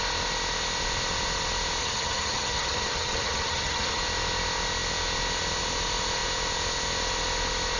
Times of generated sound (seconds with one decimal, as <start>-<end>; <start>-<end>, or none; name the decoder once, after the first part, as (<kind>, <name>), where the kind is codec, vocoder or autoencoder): 1.8-4.0 (vocoder, HiFi-GAN)